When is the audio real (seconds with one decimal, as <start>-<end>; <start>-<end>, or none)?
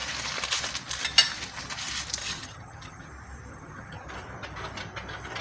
0.0-2.2; 3.1-3.5; 4.1-5.4